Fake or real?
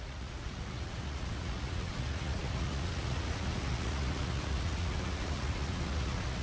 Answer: fake